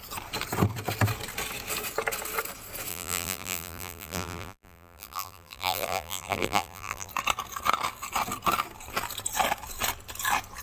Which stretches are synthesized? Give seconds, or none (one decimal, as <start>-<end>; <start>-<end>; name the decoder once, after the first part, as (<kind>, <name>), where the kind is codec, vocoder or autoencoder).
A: 2.9-7.1 (vocoder, BigVGAN v2)